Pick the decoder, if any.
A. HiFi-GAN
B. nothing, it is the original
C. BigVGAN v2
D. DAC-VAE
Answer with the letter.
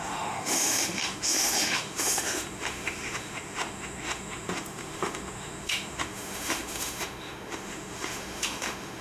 D